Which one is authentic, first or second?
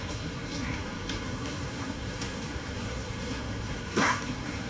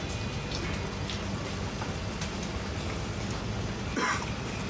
second